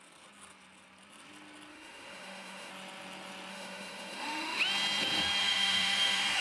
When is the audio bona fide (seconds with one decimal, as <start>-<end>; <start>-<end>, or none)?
0.0-1.7; 2.7-3.5; 4.6-5.4